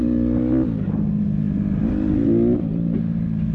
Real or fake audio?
real